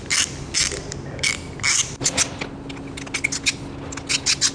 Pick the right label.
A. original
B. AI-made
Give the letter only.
A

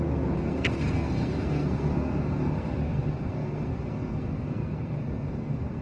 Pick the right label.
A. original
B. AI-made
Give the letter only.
B